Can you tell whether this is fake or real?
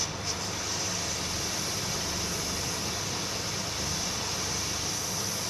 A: real